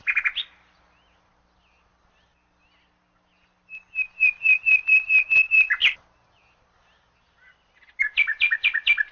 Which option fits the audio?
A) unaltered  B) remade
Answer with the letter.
A